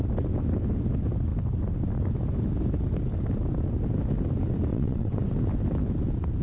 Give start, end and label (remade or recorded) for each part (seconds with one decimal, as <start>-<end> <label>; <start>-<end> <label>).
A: 0.0-4.7 recorded; 4.7-5.2 remade; 5.2-6.4 recorded